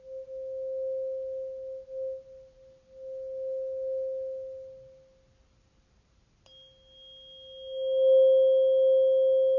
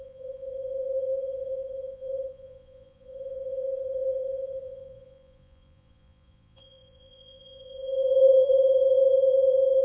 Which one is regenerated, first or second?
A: second